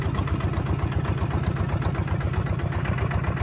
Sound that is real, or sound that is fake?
real